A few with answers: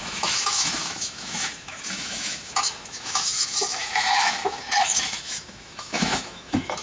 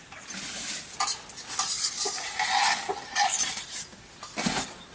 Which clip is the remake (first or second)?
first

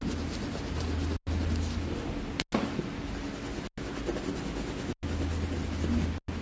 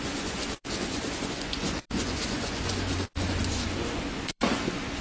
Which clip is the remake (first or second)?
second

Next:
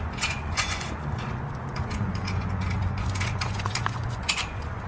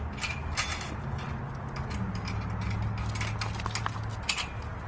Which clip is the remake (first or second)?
first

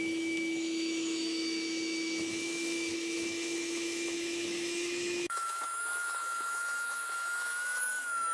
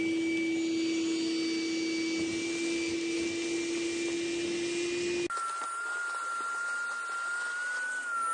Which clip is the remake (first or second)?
first